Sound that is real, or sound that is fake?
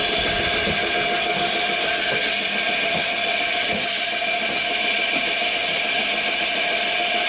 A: real